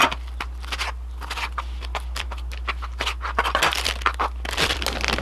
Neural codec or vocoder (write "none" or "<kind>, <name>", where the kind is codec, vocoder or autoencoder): none